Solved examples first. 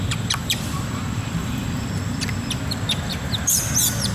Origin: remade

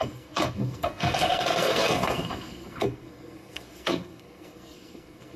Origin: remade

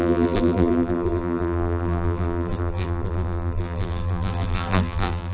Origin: remade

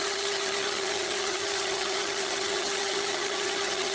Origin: remade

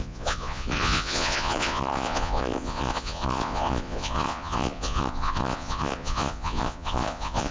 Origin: remade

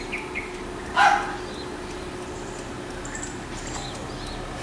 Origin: recorded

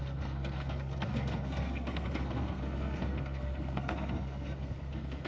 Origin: remade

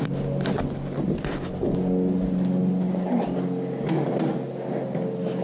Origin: recorded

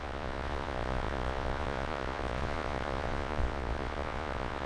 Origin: remade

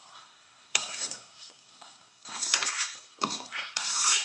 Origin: remade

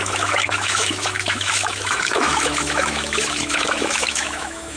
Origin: remade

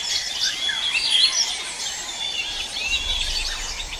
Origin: recorded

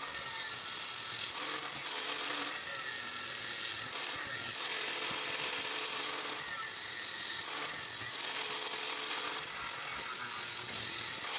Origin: recorded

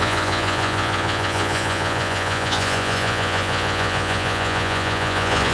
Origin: remade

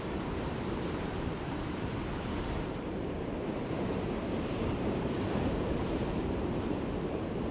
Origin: remade